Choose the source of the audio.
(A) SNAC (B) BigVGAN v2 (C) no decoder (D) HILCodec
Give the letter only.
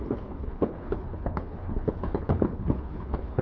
D